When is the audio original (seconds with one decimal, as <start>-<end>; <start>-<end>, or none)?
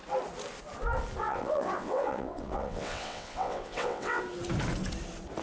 0.0-1.2; 4.2-5.4